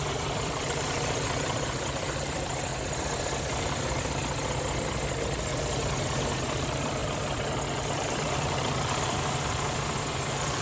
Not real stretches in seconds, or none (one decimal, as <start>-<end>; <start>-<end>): 0.0-2.7; 6.4-10.6